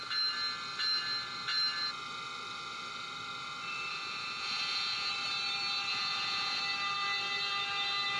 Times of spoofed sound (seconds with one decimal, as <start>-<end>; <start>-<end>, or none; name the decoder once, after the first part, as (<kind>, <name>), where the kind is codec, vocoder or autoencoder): 3.9-5.1 (vocoder, Vocos); 5.9-6.6